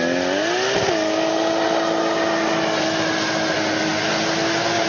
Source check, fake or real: real